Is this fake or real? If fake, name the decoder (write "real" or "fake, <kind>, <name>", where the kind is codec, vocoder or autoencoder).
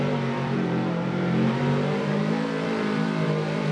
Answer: fake, vocoder, BigVGAN v2